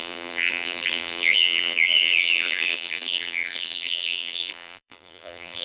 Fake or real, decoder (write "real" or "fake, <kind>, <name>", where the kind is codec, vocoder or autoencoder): fake, vocoder, BigVGAN v2